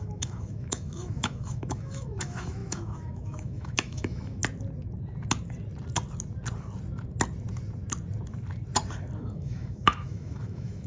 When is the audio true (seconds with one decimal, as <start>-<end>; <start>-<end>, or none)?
4.4-9.2